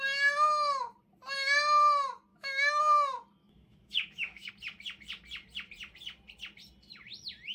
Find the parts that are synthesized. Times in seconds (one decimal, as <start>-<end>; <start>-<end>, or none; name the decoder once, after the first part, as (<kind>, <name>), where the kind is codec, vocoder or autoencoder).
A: 2.3-2.8 (autoencoder, DAC-VAE); 3.4-4.5